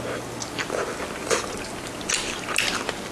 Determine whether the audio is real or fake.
real